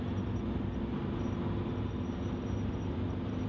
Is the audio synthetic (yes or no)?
no